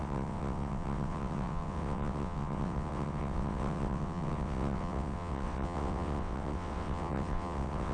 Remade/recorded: remade